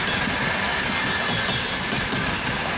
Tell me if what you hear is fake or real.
real